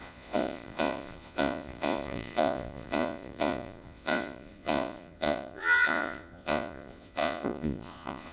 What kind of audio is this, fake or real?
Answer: fake